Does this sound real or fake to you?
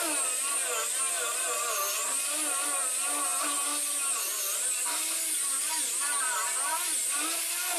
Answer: real